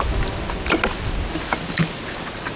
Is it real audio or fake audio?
real